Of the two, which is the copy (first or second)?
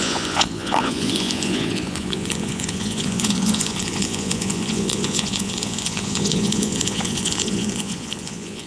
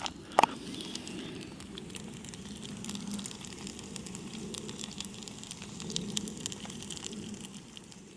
first